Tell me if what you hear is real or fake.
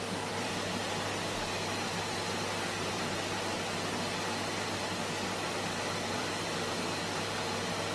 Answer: fake